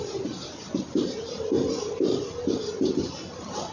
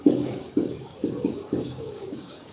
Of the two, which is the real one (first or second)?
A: first